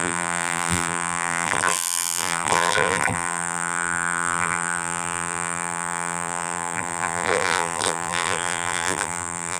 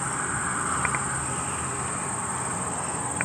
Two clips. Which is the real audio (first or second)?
second